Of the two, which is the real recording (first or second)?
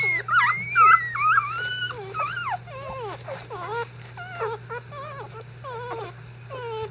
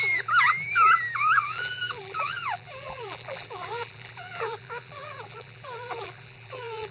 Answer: first